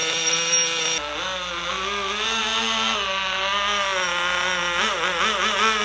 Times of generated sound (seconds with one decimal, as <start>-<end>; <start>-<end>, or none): none